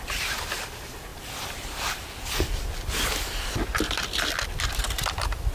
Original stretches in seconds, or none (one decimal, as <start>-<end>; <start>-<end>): none